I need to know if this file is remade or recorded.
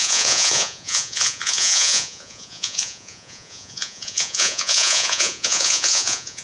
remade